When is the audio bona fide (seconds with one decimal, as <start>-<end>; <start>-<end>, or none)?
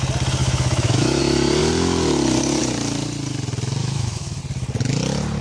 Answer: 0.0-0.4; 1.2-3.8; 4.4-5.4